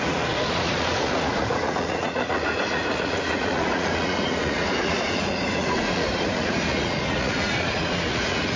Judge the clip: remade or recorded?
remade